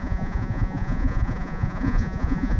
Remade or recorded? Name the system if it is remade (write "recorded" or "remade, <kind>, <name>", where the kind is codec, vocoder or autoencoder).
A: remade, vocoder, Vocos